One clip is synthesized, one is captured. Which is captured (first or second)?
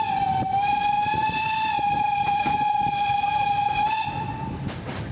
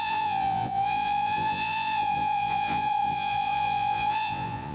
first